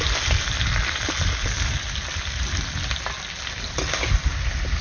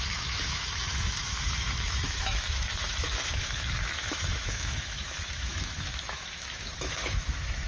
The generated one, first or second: second